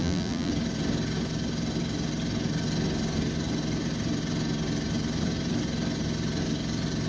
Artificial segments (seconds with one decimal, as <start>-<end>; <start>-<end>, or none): 0.0-0.5